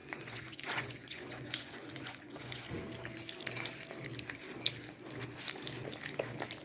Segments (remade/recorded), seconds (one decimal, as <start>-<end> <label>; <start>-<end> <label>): 0.0-2.6 remade; 2.6-6.6 recorded

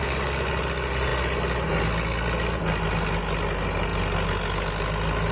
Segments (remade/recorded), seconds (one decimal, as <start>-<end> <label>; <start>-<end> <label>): 0.0-5.3 recorded

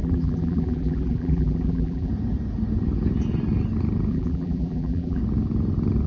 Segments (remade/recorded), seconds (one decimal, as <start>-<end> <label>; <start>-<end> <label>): 0.0-2.1 remade; 2.1-4.1 recorded; 4.1-5.2 remade; 5.2-6.1 recorded

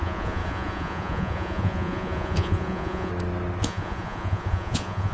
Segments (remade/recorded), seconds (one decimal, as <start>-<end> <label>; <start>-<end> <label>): 0.0-3.1 remade; 3.1-3.6 recorded; 3.6-5.1 remade

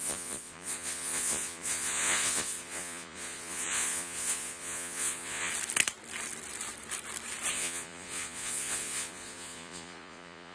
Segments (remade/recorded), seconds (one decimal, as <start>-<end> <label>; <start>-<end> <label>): 0.0-5.5 remade; 5.5-7.5 recorded; 7.5-10.5 remade

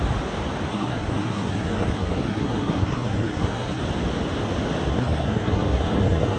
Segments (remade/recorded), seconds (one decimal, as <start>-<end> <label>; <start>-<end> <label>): 0.0-0.7 recorded; 0.7-3.8 remade; 3.8-4.9 recorded; 4.9-6.4 remade

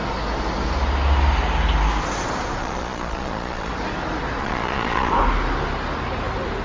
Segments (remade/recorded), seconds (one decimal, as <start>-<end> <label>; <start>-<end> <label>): 0.0-2.6 recorded; 2.6-3.7 remade; 3.7-4.4 recorded; 4.4-5.1 remade; 5.1-6.6 recorded

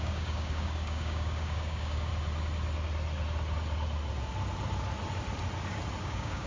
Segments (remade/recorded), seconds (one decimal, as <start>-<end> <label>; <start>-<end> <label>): 0.0-2.1 remade; 2.1-6.0 recorded; 6.0-6.5 remade